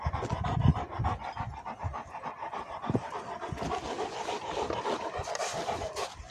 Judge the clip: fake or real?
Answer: real